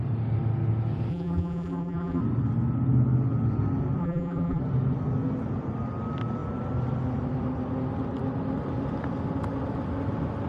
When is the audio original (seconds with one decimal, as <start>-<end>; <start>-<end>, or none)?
0.0-1.1; 2.2-4.0; 4.6-10.5

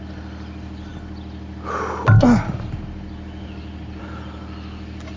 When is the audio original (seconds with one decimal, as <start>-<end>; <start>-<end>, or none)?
0.0-5.2

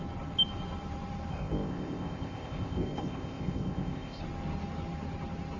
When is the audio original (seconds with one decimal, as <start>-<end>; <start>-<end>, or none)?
0.0-1.3; 4.2-5.6

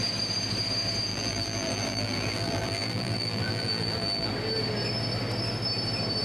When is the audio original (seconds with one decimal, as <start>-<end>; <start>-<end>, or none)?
0.0-1.1; 4.3-6.2

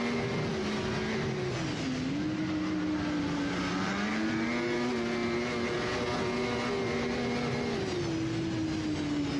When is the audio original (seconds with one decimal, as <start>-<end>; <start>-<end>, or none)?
0.0-3.7; 4.5-9.4

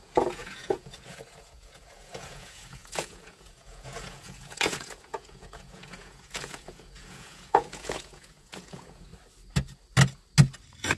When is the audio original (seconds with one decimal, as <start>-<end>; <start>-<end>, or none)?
9.1-11.0